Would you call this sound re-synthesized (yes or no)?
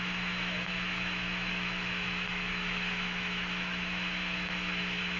yes